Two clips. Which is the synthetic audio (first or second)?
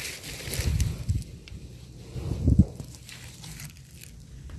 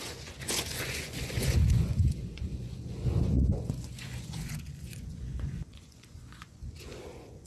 second